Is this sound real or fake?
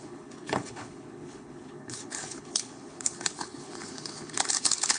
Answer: fake